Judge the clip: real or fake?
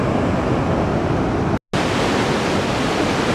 real